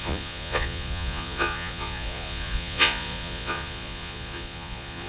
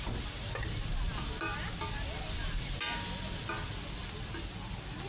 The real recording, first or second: second